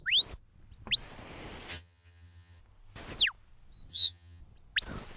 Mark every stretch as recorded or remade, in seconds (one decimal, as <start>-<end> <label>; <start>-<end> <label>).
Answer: 0.0-1.7 recorded; 1.7-2.6 remade; 2.6-3.9 recorded; 3.9-4.4 remade; 4.4-5.2 recorded